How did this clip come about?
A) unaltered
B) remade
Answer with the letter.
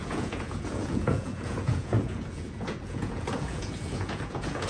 B